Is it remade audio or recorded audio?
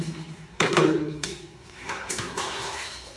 remade